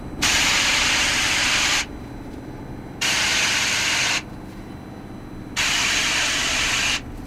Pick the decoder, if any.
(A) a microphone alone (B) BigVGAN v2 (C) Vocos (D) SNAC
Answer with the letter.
A